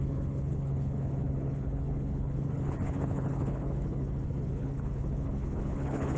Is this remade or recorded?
remade